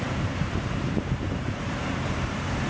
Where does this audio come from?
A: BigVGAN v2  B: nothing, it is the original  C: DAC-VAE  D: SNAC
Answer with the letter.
A